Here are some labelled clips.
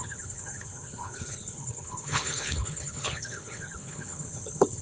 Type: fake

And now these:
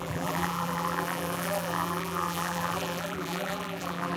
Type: fake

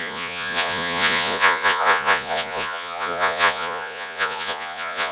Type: fake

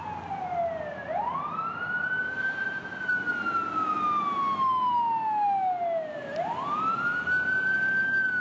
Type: real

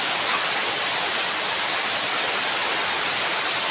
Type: real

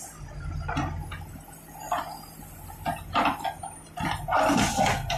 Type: real